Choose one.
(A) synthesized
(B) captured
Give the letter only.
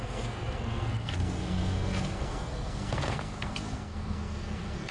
A